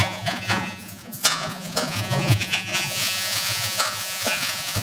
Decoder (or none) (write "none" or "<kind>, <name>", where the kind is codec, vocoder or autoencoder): vocoder, Vocos